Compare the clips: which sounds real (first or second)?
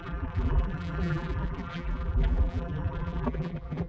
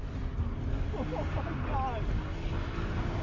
second